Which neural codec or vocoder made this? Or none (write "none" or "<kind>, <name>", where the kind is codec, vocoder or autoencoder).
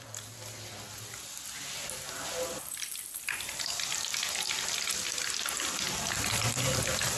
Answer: none